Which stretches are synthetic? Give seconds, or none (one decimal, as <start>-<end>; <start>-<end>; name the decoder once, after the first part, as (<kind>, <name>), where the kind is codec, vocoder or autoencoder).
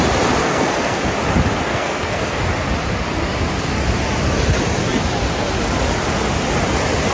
0.4-1.0 (codec, SNAC); 1.7-2.4